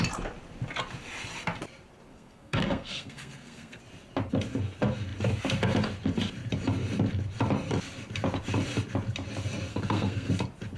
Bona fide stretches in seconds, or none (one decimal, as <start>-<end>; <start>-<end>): 0.0-2.1; 3.8-9.7; 10.3-10.8

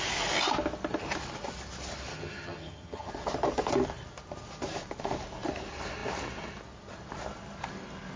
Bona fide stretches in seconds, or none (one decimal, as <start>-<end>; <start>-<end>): 0.0-2.1; 3.1-8.2